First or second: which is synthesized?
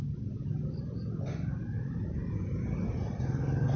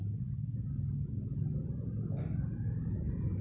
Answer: first